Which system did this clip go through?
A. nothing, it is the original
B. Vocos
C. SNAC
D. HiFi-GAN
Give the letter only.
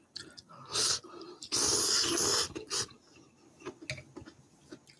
A